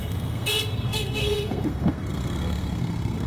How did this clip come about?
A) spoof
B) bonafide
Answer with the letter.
A